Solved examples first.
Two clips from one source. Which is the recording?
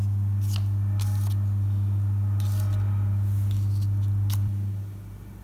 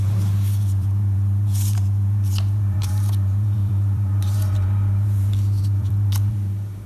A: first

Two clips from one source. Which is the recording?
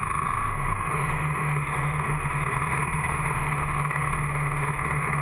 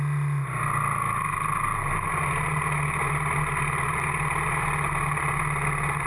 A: second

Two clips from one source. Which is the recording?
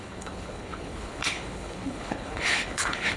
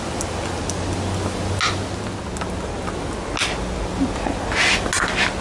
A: second